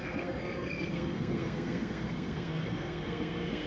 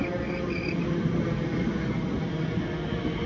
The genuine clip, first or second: second